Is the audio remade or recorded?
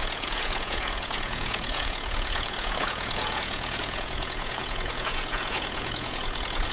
remade